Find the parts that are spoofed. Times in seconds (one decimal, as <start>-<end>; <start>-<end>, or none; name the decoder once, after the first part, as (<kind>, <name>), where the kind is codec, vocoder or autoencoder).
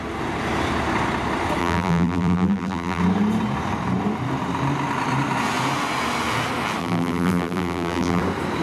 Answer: 1.6-3.0 (vocoder, BigVGAN v2); 6.8-8.2